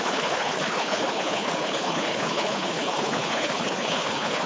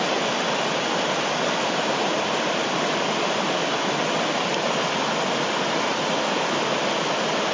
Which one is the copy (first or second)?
first